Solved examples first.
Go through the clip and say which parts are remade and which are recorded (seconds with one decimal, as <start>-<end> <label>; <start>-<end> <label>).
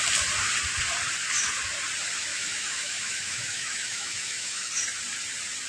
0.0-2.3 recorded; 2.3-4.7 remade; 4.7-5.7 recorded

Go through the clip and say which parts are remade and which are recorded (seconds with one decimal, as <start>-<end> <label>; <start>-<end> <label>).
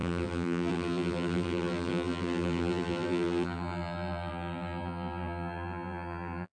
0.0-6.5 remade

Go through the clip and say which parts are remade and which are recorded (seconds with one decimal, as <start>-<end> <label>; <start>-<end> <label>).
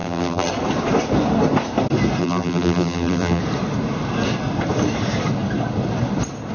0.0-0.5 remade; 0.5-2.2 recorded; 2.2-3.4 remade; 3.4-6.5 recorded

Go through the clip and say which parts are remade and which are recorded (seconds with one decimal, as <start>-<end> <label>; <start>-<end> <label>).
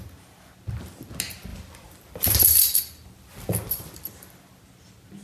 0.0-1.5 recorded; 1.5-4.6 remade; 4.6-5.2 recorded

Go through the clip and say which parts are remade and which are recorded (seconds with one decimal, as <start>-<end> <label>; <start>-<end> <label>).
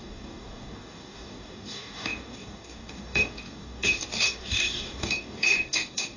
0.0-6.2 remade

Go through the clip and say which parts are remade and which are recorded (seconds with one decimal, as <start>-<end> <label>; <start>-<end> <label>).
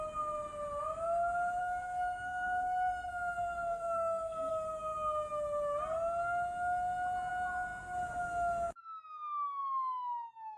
0.0-1.6 recorded; 1.6-4.5 remade; 4.5-10.6 recorded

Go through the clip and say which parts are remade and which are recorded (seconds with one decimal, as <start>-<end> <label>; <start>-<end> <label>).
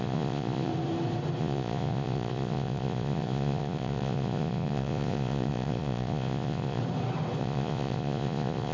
0.0-0.7 remade; 0.7-1.4 recorded; 1.4-6.8 remade; 6.8-7.4 recorded; 7.4-8.7 remade